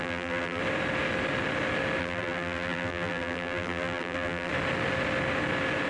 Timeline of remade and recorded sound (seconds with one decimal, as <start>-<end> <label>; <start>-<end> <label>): 0.0-0.6 remade; 0.6-2.0 recorded; 2.0-4.5 remade; 4.5-5.9 recorded